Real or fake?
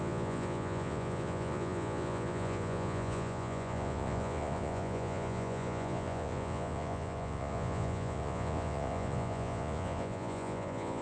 fake